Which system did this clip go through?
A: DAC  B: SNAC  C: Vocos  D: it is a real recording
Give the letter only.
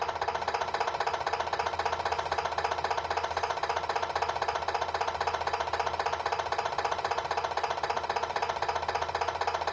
D